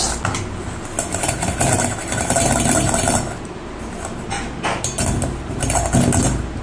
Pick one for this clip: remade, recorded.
recorded